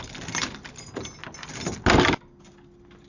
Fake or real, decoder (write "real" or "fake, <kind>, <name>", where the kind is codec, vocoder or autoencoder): real